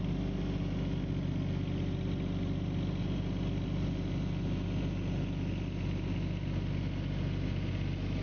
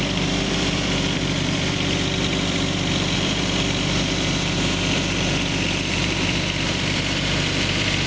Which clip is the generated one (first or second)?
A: second